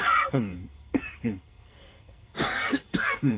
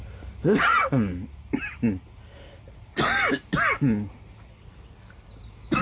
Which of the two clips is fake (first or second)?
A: first